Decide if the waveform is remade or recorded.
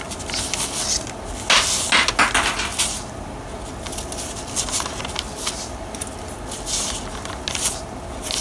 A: recorded